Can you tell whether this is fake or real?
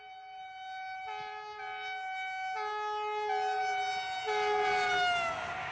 real